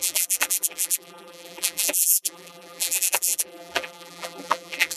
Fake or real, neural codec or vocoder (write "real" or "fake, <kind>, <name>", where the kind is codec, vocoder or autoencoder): fake, vocoder, BigVGAN v2